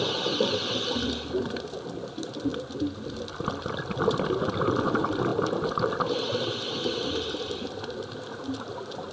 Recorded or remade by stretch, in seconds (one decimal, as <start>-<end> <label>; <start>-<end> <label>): 0.0-9.1 recorded